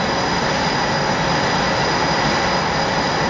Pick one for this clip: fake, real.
real